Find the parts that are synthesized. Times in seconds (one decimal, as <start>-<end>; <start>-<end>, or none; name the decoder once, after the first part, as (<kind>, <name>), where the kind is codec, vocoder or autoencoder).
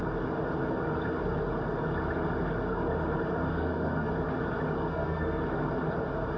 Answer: 3.5-4.1 (codec, SNAC); 4.9-5.4